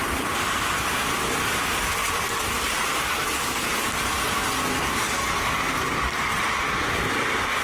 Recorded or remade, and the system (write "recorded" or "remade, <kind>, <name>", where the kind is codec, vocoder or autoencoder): recorded